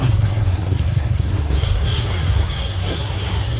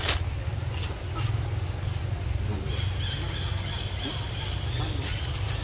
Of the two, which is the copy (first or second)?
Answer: first